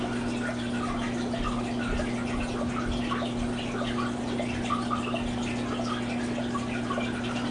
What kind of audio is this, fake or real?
real